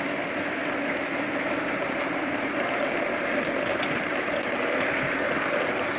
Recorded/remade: recorded